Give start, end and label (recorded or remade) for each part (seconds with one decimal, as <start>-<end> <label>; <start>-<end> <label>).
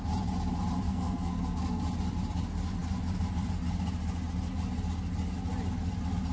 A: 0.0-0.9 recorded; 0.9-1.8 remade; 1.8-6.3 recorded